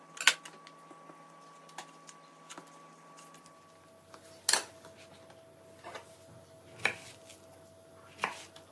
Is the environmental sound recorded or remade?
recorded